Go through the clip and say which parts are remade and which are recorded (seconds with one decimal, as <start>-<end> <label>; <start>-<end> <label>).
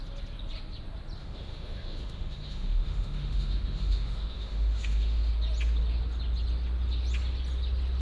0.0-1.2 recorded; 1.2-5.3 remade; 5.3-8.0 recorded